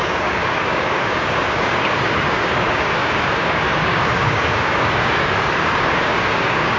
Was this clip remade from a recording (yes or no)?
yes